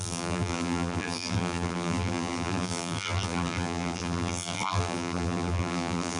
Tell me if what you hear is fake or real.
fake